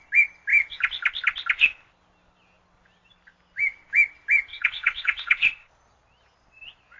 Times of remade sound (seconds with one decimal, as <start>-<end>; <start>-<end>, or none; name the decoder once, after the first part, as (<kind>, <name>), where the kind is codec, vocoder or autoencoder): 4.5-5.7 (vocoder, WaveNeXt)